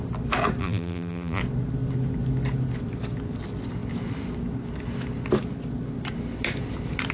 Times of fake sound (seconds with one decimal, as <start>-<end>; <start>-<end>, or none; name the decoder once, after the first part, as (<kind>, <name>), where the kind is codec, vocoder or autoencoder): 0.6-1.4 (vocoder, BigVGAN v2)